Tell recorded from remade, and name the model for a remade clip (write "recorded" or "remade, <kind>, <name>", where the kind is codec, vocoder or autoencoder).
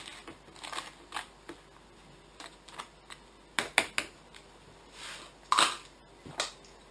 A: recorded